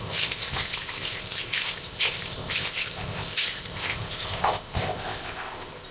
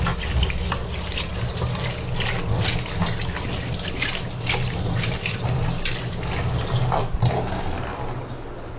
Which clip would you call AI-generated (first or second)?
first